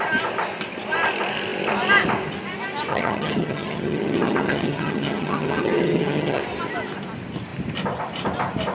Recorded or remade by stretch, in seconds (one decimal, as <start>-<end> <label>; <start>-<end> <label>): 0.0-2.9 recorded; 2.9-6.4 remade; 6.4-8.7 recorded